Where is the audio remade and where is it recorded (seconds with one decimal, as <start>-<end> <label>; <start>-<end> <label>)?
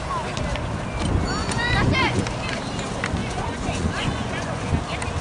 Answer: 0.0-1.4 recorded; 1.4-2.2 remade; 2.2-3.2 recorded; 3.2-4.7 remade; 4.7-5.2 recorded